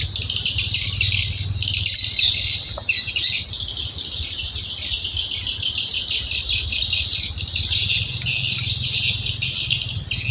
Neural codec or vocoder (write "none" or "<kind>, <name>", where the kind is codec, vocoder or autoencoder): none